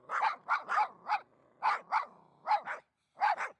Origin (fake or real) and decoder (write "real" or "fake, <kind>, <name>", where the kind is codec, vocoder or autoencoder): real